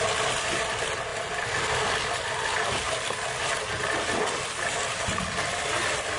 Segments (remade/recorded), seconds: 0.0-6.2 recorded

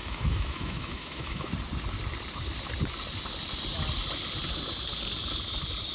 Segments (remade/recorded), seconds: 0.0-1.5 remade; 1.5-5.9 recorded